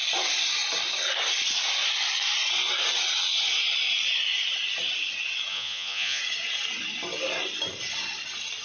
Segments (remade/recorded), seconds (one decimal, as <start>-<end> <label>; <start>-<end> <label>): 0.0-5.5 recorded; 5.5-6.2 remade; 6.2-8.6 recorded